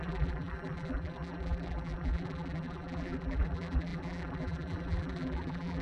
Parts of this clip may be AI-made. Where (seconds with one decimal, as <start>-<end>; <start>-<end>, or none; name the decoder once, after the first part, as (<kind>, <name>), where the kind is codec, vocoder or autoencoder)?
0.0-5.8 (vocoder, BigVGAN v2)